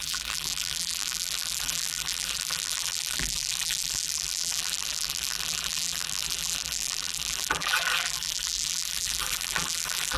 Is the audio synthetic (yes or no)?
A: yes